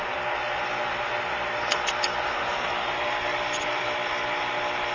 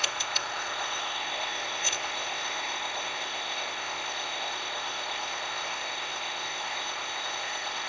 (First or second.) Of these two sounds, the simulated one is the second